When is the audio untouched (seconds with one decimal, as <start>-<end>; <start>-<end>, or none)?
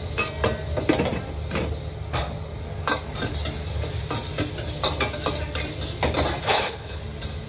0.0-6.4; 7.0-7.5